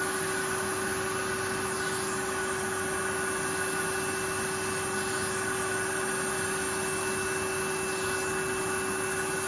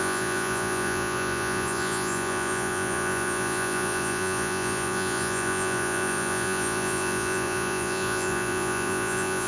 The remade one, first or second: second